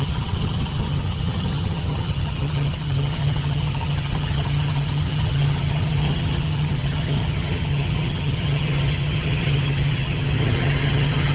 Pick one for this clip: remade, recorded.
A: remade